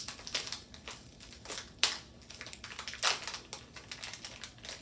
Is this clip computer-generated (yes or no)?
no